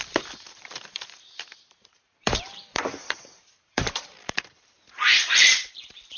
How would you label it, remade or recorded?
remade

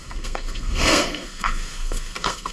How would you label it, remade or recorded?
remade